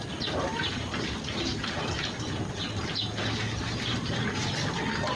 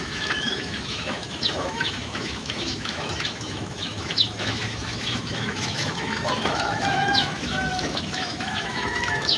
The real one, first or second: first